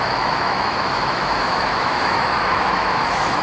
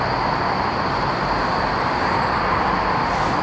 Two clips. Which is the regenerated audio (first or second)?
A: first